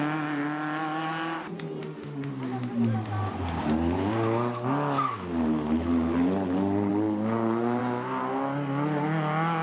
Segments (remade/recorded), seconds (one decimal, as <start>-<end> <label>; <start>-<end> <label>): 0.0-1.8 recorded; 1.8-2.3 remade; 2.3-9.6 recorded